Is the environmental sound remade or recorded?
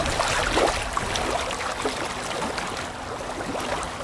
recorded